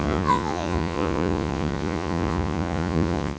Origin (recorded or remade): remade